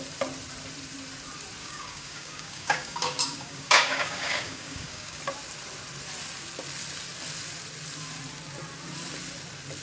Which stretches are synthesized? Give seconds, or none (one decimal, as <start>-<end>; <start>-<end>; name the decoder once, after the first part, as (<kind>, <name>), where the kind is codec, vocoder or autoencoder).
1.6-5.2 (codec, DAC)